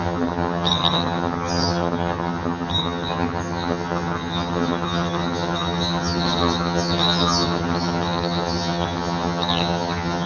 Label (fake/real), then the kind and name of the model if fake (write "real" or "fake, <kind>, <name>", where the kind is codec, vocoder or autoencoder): fake, vocoder, HiFi-GAN